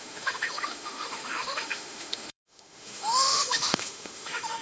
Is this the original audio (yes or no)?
no